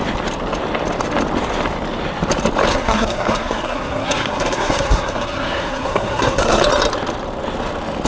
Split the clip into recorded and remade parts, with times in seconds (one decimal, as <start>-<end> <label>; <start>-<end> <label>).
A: 0.0-2.7 recorded; 2.7-6.6 remade; 6.6-8.1 recorded